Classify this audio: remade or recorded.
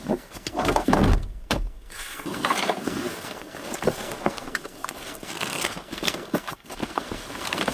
remade